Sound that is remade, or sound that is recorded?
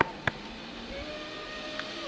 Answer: recorded